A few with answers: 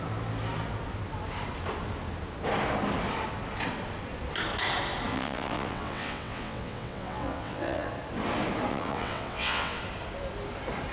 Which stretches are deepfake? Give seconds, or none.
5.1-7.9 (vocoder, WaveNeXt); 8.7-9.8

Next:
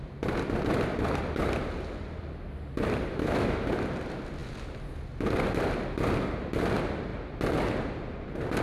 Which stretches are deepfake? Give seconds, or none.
3.1-3.7 (autoencoder, DAC-VAE)

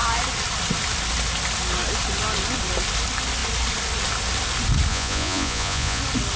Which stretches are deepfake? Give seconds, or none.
4.9-6.0 (vocoder, Vocos)

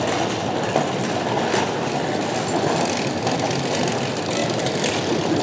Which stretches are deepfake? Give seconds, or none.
4.4-5.4 (vocoder, BigVGAN v2)